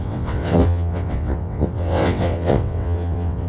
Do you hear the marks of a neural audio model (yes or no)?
yes